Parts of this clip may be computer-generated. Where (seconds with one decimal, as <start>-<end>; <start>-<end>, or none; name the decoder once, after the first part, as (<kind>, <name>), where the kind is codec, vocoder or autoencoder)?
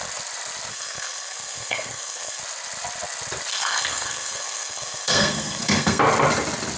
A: 0.7-2.4 (codec, SNAC); 3.5-6.0